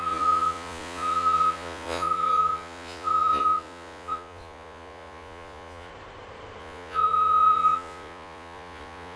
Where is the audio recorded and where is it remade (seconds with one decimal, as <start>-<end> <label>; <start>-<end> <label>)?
0.0-5.9 remade; 5.9-6.6 recorded; 6.6-9.2 remade

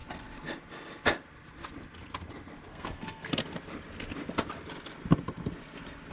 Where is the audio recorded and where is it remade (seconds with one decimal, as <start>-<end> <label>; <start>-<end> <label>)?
0.0-2.7 recorded; 2.7-3.4 remade; 3.4-6.1 recorded